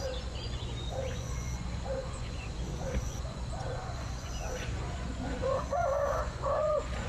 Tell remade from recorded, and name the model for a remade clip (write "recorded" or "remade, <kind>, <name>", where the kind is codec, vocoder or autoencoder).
remade, vocoder, Vocos